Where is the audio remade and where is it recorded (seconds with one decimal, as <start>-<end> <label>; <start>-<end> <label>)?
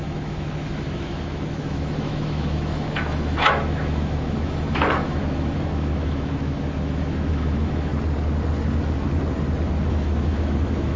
0.0-7.9 remade; 7.9-9.9 recorded; 9.9-11.0 remade